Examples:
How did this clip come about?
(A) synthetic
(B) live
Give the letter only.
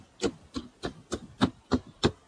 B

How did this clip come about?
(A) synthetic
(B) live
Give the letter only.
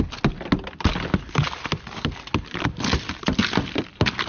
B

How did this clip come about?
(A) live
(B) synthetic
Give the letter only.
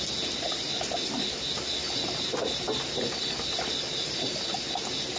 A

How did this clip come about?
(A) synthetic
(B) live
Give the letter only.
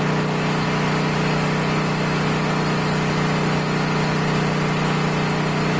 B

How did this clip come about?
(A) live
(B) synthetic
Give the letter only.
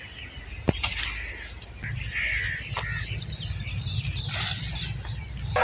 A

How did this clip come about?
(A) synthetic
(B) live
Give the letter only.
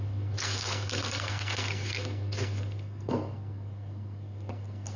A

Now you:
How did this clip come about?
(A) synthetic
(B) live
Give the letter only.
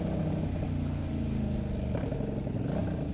B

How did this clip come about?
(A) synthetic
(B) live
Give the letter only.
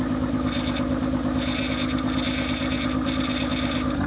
B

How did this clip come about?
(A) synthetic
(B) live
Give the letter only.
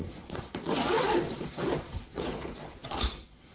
A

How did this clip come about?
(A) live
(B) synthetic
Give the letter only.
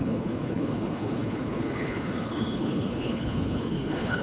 B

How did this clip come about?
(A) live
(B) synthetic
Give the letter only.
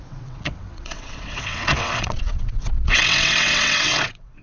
B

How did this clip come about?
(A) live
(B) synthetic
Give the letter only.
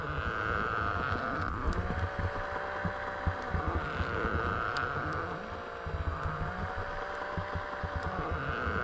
A